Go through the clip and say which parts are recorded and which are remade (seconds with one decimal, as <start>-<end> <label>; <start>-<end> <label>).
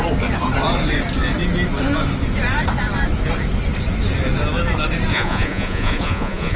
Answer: 0.0-5.1 recorded; 5.1-6.6 remade